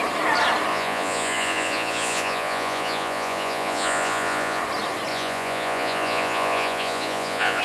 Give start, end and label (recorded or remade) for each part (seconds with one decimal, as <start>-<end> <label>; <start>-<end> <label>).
0.0-0.7 recorded; 0.7-4.6 remade; 4.6-5.1 recorded; 5.1-7.6 remade

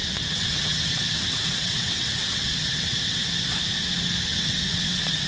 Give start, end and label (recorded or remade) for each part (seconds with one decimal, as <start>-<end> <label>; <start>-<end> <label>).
0.0-3.2 remade; 3.2-4.3 recorded; 4.3-5.3 remade

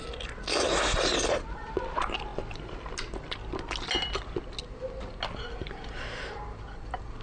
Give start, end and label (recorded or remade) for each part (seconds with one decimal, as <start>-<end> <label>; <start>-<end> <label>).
0.0-0.9 recorded; 0.9-1.8 remade; 1.8-7.2 recorded